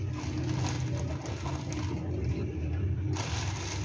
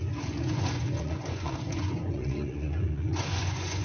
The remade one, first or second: second